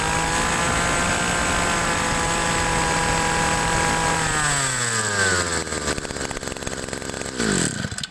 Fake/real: real